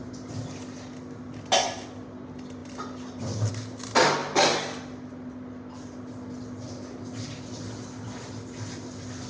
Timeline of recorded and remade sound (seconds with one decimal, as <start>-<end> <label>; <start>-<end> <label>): 0.0-9.3 recorded